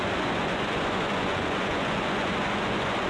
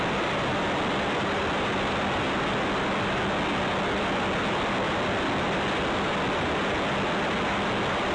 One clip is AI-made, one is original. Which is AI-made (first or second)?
first